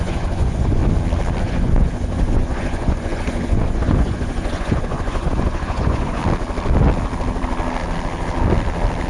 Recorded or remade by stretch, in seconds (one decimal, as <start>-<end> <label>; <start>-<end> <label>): 0.0-0.8 remade; 0.8-1.4 recorded; 1.4-6.2 remade; 6.2-9.1 recorded